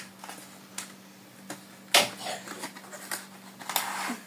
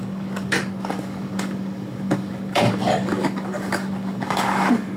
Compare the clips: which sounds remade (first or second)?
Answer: second